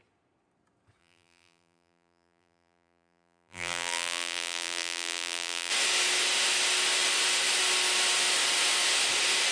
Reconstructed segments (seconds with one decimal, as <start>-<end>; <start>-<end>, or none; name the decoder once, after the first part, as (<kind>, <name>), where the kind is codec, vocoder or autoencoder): 1.0-5.7 (vocoder, BigVGAN v2)